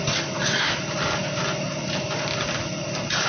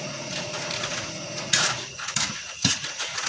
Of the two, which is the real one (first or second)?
first